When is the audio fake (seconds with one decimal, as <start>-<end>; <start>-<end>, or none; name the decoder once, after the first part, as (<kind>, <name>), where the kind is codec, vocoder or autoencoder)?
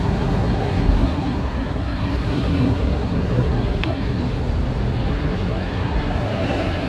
0.0-4.2 (codec, SNAC); 5.1-6.9